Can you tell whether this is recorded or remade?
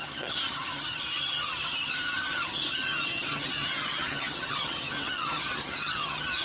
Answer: remade